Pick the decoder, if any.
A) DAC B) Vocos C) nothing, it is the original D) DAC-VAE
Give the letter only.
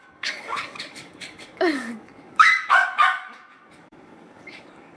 A